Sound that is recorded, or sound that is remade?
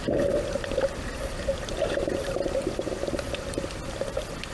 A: recorded